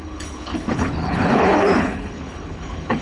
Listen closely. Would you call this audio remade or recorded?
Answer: remade